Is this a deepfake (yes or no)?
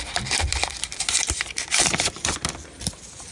yes